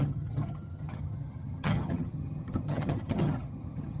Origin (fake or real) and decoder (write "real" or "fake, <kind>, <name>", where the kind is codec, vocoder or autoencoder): fake, vocoder, HiFi-GAN